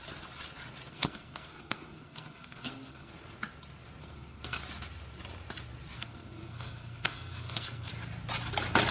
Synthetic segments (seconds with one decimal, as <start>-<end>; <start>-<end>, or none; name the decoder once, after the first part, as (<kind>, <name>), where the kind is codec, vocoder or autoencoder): 0.9-3.1 (codec, SNAC); 4.0-4.6; 5.9-7.9